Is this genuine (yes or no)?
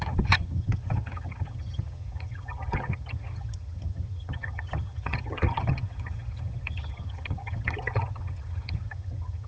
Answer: no